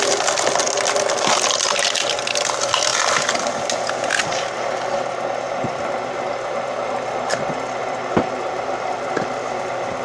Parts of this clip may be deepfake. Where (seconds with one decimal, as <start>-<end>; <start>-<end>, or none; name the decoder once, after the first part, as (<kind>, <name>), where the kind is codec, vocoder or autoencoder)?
none